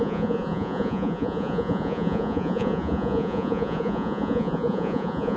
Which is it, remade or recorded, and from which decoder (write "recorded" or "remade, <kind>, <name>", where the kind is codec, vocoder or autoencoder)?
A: remade, vocoder, Vocos